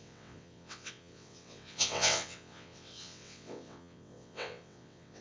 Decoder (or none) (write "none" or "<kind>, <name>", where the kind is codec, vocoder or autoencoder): vocoder, WaveNeXt